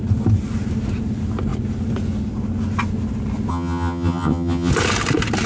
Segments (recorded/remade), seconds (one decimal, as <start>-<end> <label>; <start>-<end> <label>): 0.0-3.5 recorded; 3.5-4.7 remade; 4.7-5.5 recorded